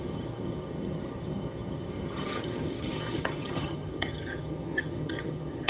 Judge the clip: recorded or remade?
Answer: remade